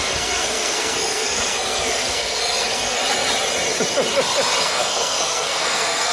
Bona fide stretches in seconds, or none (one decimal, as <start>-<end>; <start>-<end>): 3.0-4.6